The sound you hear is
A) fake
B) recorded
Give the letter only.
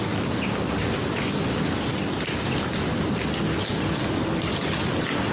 B